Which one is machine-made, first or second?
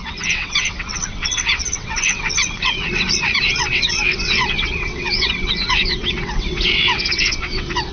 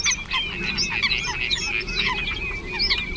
first